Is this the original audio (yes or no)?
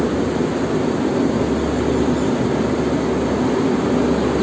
yes